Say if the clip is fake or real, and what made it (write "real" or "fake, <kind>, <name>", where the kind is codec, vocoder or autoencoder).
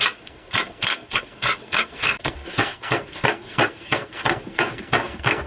fake, codec, SNAC